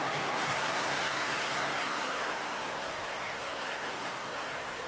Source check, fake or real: fake